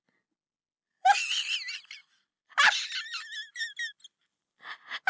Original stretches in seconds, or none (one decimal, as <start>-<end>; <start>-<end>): 0.0-5.1